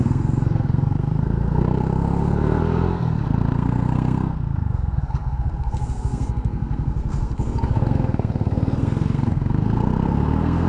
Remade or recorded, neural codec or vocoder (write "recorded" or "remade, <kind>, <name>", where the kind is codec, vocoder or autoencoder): remade, codec, SNAC